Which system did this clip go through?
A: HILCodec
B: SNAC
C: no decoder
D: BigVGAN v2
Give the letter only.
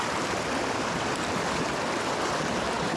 D